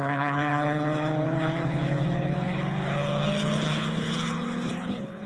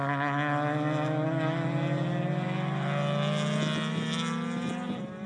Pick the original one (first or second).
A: second